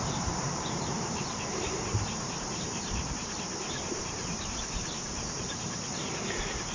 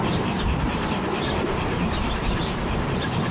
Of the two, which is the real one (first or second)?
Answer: second